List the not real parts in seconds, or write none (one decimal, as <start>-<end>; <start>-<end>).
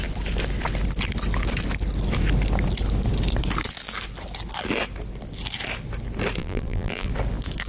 6.4-7.1